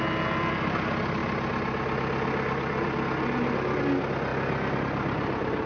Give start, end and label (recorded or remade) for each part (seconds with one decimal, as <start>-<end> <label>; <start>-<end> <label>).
0.0-5.7 recorded